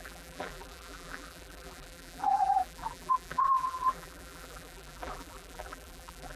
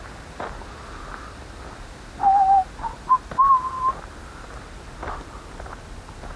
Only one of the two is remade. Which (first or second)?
first